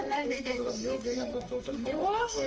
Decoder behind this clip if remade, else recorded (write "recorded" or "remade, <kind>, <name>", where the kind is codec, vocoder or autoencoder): remade, autoencoder, DAC-VAE